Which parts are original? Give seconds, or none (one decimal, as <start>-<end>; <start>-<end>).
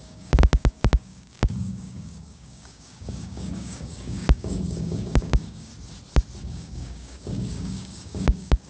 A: 5.7-6.4